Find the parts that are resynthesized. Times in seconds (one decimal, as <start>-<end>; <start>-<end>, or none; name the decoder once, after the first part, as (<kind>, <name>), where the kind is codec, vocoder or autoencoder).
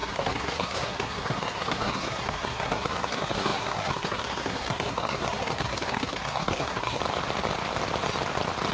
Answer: 0.0-7.0 (codec, SNAC)